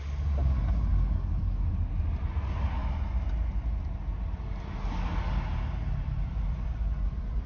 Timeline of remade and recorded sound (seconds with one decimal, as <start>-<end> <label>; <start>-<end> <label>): 0.0-0.9 recorded; 0.9-1.7 remade; 1.7-7.5 recorded